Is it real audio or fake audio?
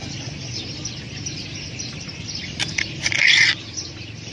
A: fake